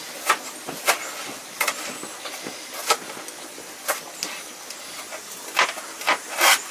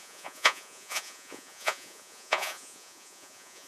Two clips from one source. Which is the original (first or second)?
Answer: first